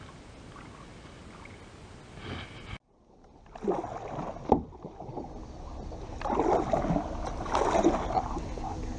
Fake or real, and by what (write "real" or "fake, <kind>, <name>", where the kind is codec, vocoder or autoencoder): real